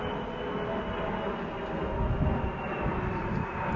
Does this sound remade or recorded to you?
recorded